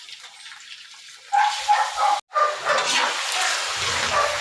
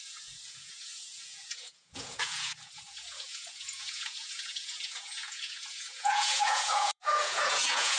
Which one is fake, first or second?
second